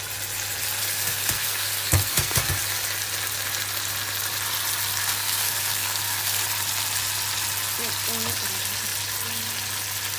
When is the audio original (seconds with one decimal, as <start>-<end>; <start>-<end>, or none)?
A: 0.0-0.8; 2.5-5.0; 6.4-10.2